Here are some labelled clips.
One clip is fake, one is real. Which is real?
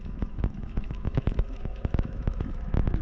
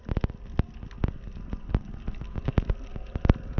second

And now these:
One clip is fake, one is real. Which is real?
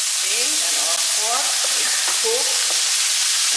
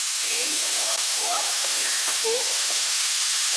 first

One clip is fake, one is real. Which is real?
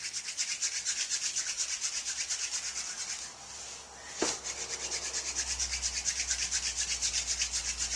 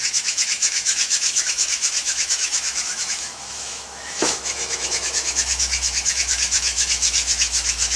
first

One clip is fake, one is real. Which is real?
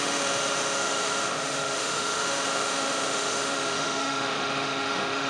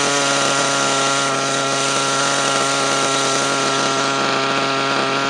second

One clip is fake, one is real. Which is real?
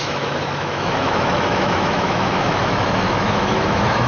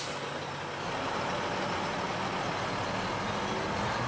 second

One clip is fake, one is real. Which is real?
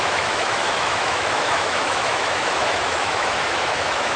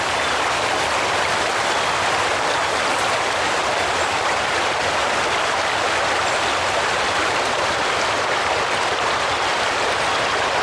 second